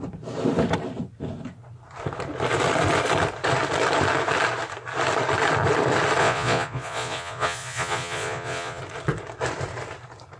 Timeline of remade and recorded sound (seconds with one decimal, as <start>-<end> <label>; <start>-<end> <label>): 0.0-6.2 recorded; 6.2-8.8 remade; 8.8-10.4 recorded